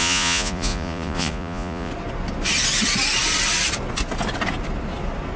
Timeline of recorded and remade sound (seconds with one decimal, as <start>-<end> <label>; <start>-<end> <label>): 0.0-1.9 remade; 1.9-5.4 recorded